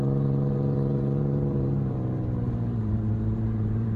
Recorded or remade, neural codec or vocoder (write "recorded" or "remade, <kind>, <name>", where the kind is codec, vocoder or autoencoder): remade, vocoder, BigVGAN v2